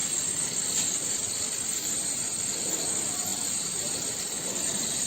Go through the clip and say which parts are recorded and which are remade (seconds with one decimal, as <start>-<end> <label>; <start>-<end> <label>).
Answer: 0.0-5.1 recorded